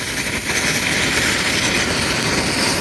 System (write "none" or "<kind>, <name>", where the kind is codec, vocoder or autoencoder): none